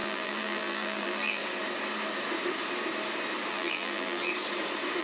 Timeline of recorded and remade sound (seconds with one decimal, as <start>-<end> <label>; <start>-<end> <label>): 0.0-1.4 remade; 1.4-3.5 recorded; 3.5-4.3 remade; 4.3-5.0 recorded